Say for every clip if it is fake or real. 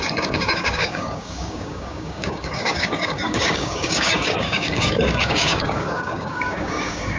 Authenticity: fake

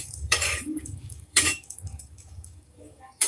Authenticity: fake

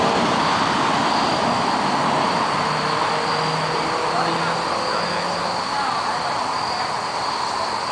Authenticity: real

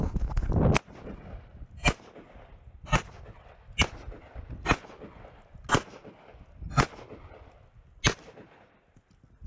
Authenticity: real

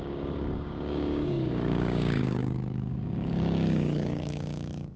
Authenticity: fake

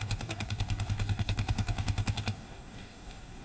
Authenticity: fake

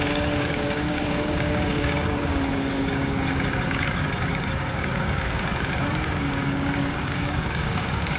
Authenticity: fake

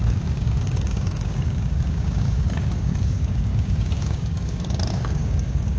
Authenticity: fake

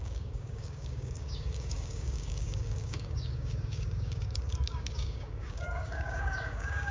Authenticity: fake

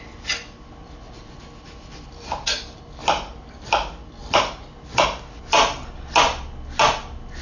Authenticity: real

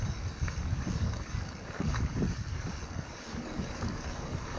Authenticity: fake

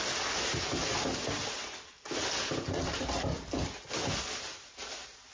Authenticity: real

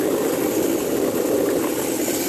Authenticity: real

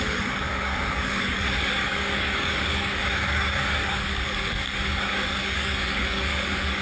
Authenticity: fake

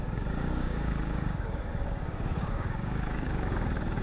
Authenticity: fake